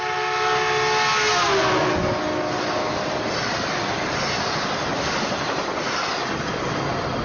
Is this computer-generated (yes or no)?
no